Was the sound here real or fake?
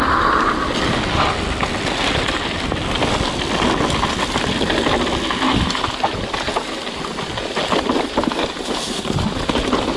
real